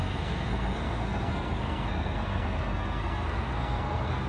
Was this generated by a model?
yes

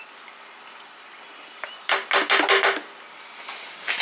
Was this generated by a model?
no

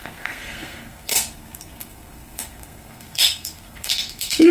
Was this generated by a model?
yes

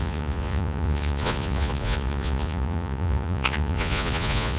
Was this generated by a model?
yes